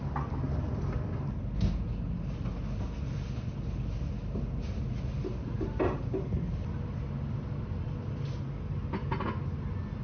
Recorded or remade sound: recorded